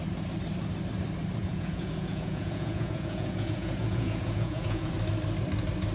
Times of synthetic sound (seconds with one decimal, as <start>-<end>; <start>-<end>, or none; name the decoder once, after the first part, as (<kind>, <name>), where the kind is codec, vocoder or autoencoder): 1.4-4.9 (vocoder, Vocos)